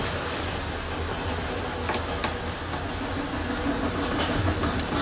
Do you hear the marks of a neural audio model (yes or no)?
no